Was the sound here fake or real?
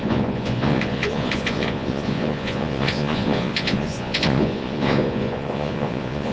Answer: fake